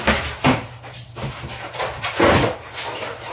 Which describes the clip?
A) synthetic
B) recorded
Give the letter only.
B